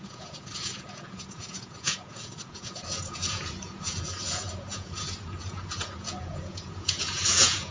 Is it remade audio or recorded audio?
remade